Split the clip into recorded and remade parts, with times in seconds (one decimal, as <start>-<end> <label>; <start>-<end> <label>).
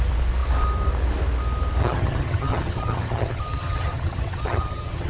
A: 0.0-1.8 recorded; 1.8-5.1 remade